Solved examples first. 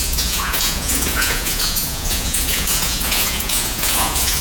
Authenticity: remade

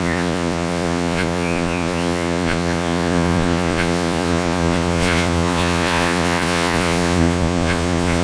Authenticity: remade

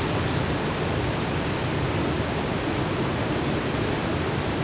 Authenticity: recorded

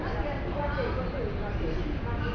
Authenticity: recorded